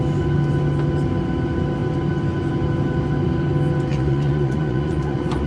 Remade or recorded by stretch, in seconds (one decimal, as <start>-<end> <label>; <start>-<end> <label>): 0.0-3.9 recorded; 3.9-5.5 remade